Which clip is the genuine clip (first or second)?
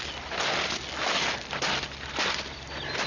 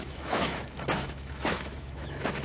first